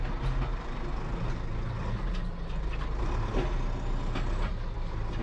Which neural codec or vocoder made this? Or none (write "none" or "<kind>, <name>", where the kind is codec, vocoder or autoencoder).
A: none